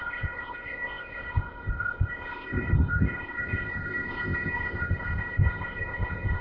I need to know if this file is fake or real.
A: fake